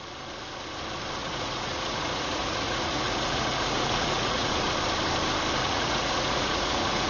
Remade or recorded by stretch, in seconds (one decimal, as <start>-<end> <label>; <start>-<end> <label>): 0.0-1.2 recorded; 1.2-4.5 remade; 4.5-5.6 recorded; 5.6-7.1 remade